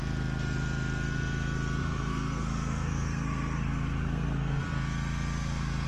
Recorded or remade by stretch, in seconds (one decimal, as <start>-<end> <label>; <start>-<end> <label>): 0.0-1.8 recorded; 1.8-4.6 remade; 4.6-5.9 recorded

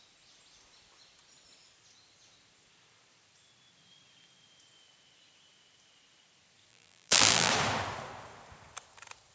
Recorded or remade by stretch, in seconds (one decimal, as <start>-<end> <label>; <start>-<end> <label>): 0.0-6.7 recorded; 6.7-7.5 remade; 7.5-9.3 recorded

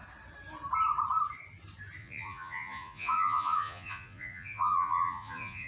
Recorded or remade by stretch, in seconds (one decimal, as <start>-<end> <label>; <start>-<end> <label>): 0.0-2.0 recorded; 2.0-5.7 remade

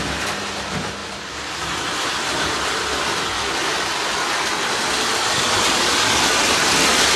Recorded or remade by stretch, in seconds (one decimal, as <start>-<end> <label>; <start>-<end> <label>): 0.0-1.0 recorded; 1.0-2.5 remade; 2.5-7.2 recorded

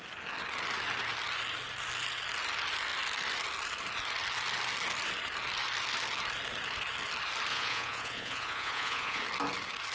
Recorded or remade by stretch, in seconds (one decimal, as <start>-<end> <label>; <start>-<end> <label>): 0.0-7.5 recorded; 7.5-9.2 remade; 9.2-9.9 recorded

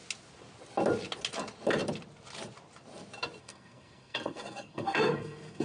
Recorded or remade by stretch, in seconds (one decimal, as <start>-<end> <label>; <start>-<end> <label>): 0.0-3.4 recorded; 3.4-5.6 remade